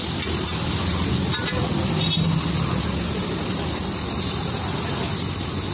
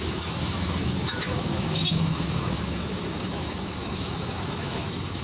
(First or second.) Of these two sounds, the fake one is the second